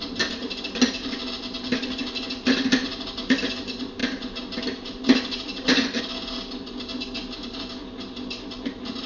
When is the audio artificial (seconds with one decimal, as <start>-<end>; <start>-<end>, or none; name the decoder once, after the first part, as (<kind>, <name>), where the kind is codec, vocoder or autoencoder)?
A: none